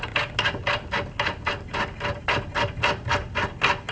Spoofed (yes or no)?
no